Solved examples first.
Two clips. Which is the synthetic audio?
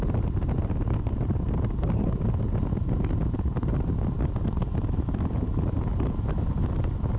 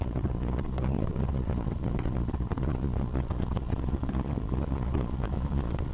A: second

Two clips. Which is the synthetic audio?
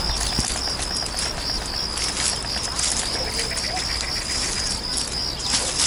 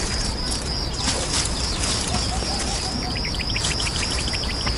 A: second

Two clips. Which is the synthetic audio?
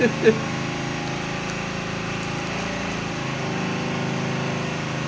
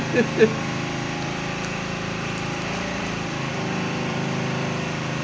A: second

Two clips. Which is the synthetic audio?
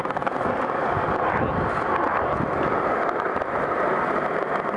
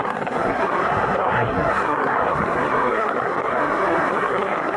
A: second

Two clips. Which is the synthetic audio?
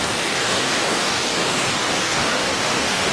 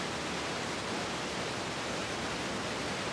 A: first